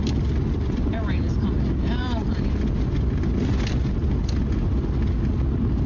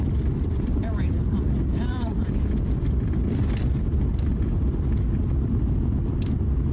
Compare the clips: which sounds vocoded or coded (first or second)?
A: second